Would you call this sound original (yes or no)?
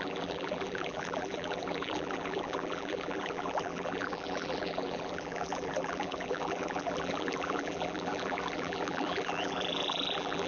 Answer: no